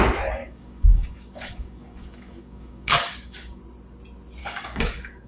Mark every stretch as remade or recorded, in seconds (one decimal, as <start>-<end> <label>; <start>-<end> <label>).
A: 0.0-0.4 recorded; 0.4-3.6 remade; 3.6-4.4 recorded; 4.4-5.3 remade